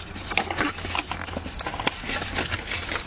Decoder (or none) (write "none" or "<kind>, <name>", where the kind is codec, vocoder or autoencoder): none